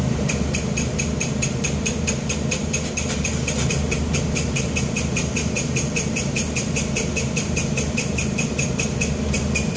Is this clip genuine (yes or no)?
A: no